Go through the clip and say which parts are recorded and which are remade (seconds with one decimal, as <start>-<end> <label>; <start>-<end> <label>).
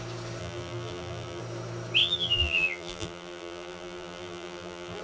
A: 0.0-0.4 recorded; 0.4-1.4 remade; 1.4-2.0 recorded; 2.0-5.0 remade